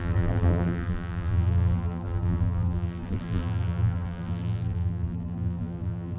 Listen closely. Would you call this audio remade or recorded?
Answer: remade